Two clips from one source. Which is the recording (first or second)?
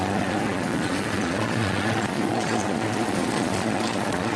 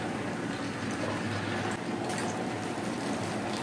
second